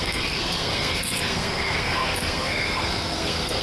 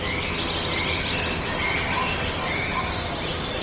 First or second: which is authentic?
second